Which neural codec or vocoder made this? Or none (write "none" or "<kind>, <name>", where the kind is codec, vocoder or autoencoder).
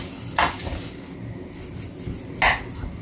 none